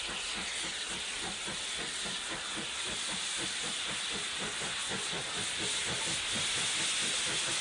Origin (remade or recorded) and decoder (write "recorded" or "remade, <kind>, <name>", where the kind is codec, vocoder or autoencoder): recorded